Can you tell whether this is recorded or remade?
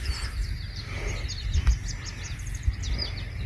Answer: recorded